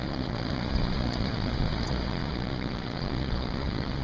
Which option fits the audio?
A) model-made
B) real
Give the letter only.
A